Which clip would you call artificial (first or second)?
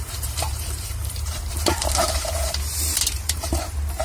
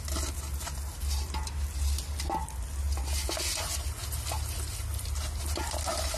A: first